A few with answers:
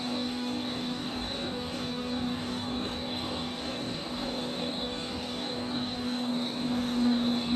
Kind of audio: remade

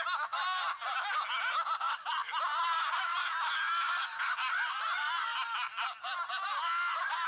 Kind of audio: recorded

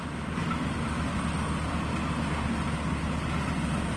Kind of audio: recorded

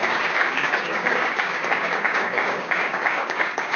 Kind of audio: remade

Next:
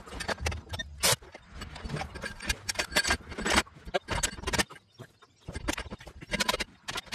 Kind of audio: recorded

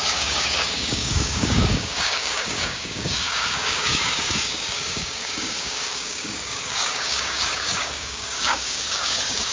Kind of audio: remade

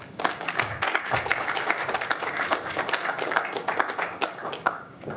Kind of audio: remade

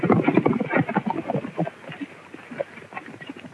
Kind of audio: recorded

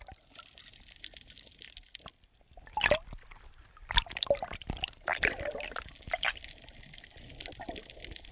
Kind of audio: recorded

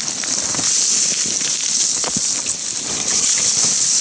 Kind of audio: recorded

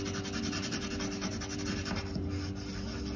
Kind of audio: recorded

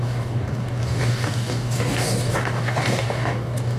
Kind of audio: remade